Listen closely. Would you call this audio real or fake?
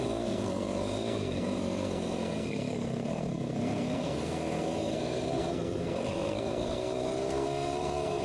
fake